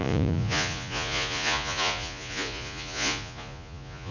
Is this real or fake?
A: fake